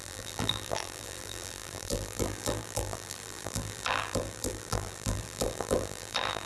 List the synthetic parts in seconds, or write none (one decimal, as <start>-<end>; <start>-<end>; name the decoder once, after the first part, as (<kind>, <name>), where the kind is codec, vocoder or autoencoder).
0.0-6.5 (vocoder, BigVGAN v2)